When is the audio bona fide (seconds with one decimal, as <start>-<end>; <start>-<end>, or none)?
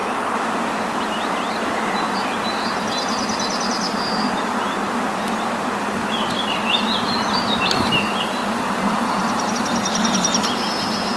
0.0-8.4; 9.5-11.2